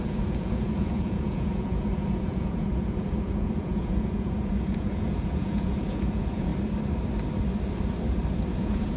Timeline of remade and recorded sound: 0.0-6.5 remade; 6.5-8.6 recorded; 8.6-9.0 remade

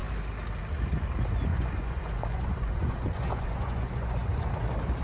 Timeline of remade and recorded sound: 0.0-1.5 recorded; 1.5-4.5 remade; 4.5-5.0 recorded

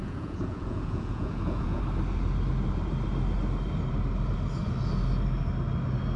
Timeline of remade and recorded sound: 0.0-1.8 remade; 1.8-6.2 recorded

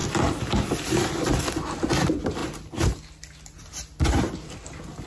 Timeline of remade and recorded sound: 0.0-5.1 recorded

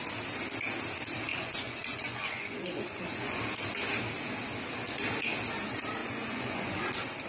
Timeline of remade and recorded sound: 0.0-1.3 recorded; 1.3-3.4 remade; 3.4-6.0 recorded; 6.0-6.8 remade; 6.8-7.3 recorded

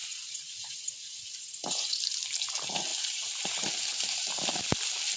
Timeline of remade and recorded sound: 0.0-2.0 remade; 2.0-5.2 recorded

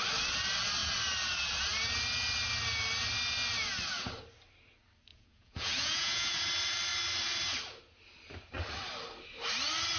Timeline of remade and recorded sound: 0.0-5.1 recorded; 5.1-6.4 remade; 6.4-10.0 recorded